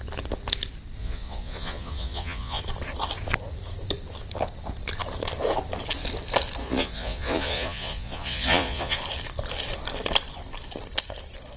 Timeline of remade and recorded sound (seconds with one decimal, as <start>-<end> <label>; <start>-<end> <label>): 0.0-1.0 recorded; 1.0-2.6 remade; 2.6-6.6 recorded; 6.6-9.0 remade; 9.0-11.6 recorded